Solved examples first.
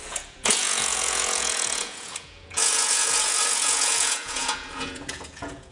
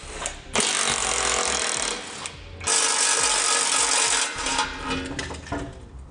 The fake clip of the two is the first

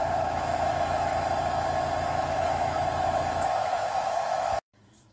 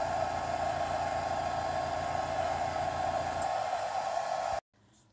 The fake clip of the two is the first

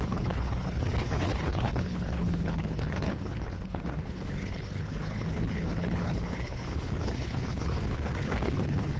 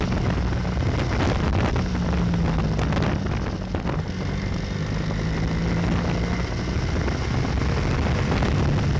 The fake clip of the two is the first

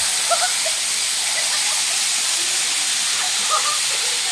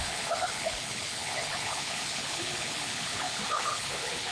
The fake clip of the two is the second